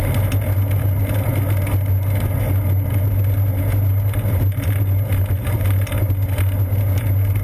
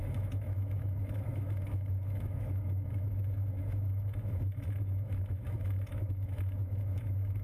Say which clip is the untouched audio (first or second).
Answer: first